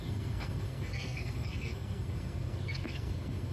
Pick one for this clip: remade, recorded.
remade